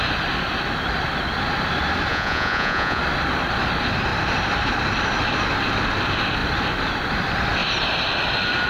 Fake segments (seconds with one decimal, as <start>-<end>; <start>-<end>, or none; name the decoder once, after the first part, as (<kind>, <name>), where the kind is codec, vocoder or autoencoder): 2.1-3.0 (vocoder, Vocos)